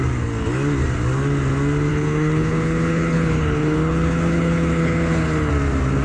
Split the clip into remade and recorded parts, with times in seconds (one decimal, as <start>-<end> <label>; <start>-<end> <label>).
0.0-1.9 recorded; 1.9-5.5 remade; 5.5-6.0 recorded